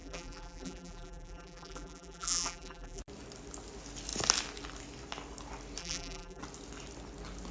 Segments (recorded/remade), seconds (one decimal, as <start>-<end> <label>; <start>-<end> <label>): 0.0-3.0 remade; 3.0-5.8 recorded; 5.8-6.4 remade; 6.4-7.5 recorded